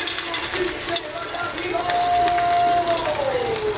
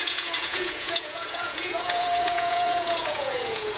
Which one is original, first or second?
first